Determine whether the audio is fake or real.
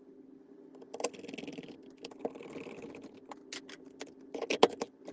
real